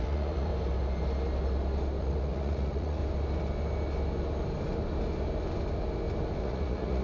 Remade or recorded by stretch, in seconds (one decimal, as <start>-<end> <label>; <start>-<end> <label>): 0.0-0.5 remade; 0.5-2.0 recorded; 2.0-3.0 remade; 3.0-6.4 recorded; 6.4-7.0 remade